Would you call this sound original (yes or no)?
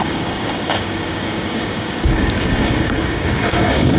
no